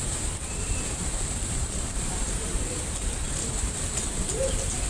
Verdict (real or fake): fake